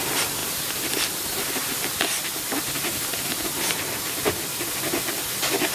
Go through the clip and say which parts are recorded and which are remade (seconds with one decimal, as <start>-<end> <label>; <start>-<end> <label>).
0.0-5.7 recorded